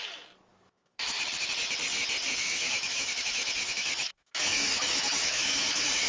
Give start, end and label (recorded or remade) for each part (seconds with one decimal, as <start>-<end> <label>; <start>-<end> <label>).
0.0-0.5 recorded; 0.5-1.1 remade; 1.1-2.4 recorded; 2.4-6.1 remade